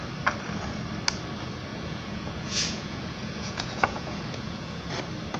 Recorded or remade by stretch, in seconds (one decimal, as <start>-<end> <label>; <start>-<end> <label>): 0.0-1.7 recorded; 1.7-4.9 remade; 4.9-5.4 recorded